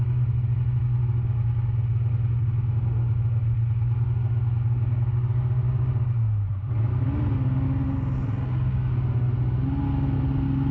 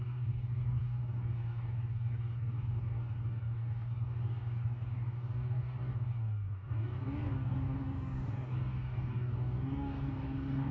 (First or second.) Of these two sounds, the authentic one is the first